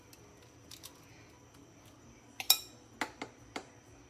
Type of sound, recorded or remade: recorded